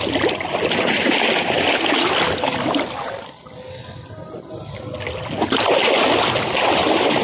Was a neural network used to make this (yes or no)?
no